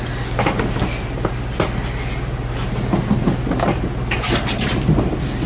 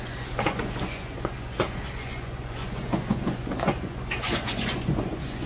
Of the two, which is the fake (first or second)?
second